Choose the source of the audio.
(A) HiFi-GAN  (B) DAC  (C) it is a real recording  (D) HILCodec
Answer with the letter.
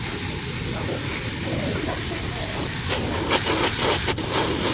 C